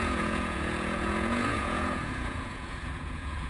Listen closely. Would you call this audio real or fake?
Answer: fake